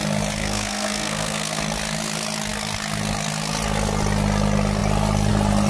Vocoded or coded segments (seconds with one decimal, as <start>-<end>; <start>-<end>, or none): 0.4-1.6